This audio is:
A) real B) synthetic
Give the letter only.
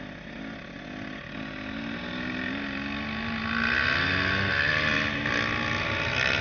A